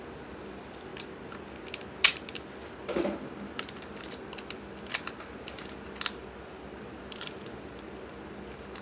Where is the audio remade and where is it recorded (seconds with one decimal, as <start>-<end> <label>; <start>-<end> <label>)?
0.0-8.8 recorded